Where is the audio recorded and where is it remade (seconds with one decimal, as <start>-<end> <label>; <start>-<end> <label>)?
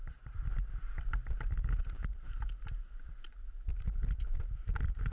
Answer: 0.0-0.4 remade; 0.4-1.8 recorded; 1.8-5.1 remade